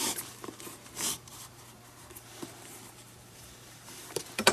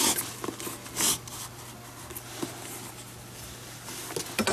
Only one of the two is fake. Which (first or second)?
first